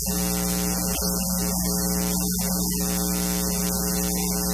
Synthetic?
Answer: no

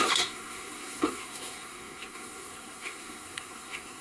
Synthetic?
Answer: yes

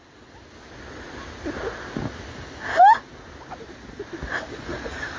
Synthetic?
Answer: no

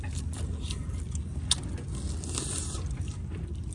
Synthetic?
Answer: no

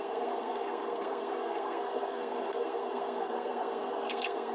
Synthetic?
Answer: yes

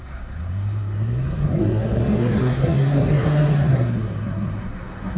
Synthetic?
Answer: yes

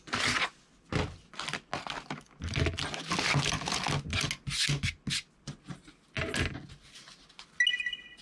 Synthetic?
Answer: no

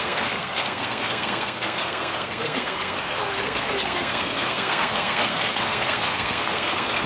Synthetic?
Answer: yes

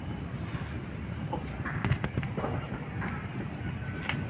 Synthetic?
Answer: no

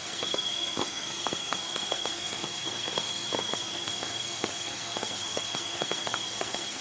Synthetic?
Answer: yes